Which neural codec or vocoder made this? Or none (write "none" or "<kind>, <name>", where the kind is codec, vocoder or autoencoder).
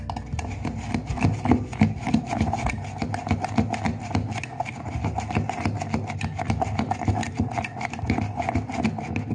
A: none